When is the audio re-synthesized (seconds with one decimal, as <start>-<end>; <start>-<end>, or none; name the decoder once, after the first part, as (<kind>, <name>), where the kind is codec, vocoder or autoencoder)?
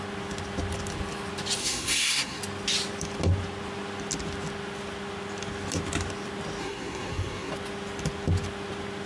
1.6-2.4 (codec, SNAC); 6.6-7.5